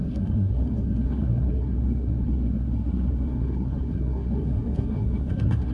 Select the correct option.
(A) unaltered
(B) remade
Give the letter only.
B